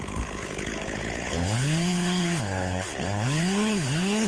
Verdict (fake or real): fake